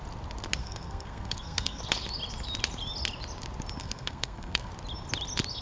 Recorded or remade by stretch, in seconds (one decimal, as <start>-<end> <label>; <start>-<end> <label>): 0.0-0.6 recorded; 0.6-1.8 remade; 1.8-3.8 recorded; 3.8-4.7 remade; 4.7-5.6 recorded